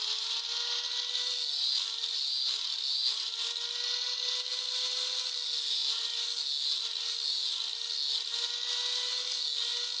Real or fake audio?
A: real